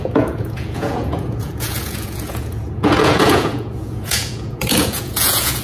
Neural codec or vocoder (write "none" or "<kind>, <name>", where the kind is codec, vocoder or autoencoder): vocoder, Vocos